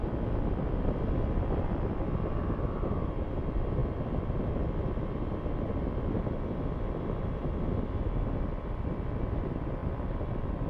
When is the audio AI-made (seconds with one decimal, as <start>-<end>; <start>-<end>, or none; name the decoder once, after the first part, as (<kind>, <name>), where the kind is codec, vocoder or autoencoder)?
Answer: none